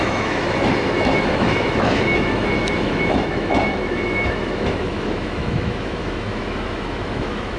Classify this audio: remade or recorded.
remade